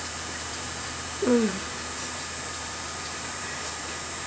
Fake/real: fake